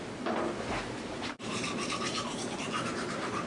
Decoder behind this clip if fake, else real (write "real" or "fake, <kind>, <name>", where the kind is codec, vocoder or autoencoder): fake, vocoder, BigVGAN v2